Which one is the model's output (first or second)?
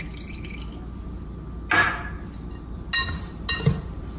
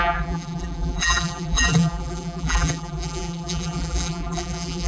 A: second